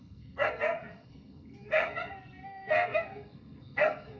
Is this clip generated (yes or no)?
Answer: yes